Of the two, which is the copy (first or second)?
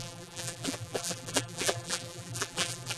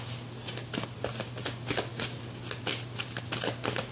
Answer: first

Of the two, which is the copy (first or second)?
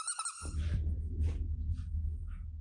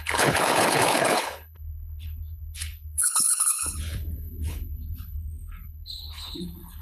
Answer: second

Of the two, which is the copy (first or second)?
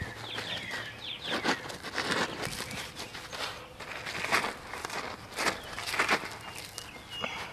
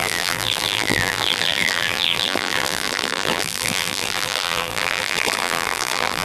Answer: second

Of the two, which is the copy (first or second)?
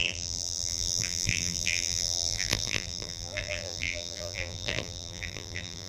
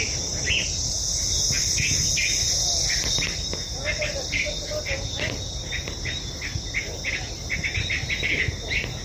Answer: first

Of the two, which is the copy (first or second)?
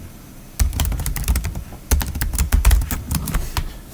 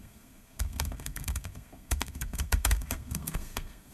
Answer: second